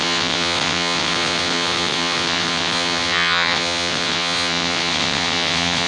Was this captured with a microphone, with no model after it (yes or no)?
no